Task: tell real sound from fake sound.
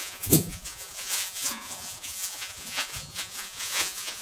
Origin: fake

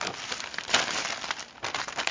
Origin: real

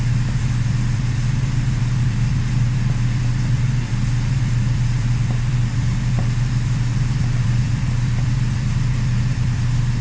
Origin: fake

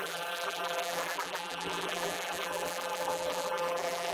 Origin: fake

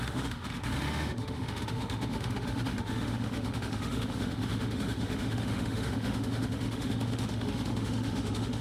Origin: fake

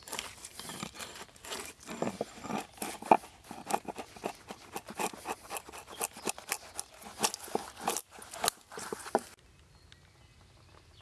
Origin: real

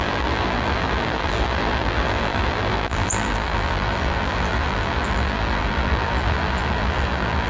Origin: fake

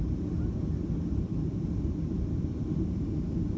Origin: real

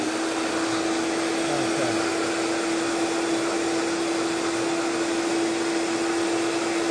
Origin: real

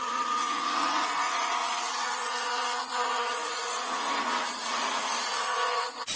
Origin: fake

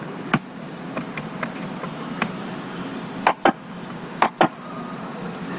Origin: real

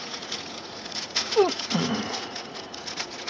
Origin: fake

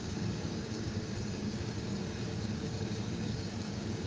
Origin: fake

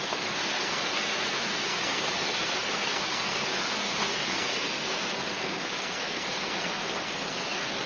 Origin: fake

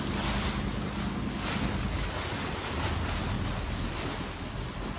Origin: real